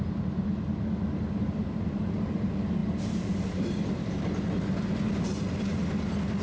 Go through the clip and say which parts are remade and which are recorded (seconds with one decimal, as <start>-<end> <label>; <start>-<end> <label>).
0.0-6.4 recorded